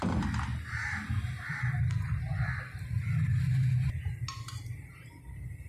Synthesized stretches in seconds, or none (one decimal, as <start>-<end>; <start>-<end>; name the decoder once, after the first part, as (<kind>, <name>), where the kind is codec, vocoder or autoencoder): none